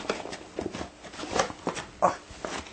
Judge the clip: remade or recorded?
recorded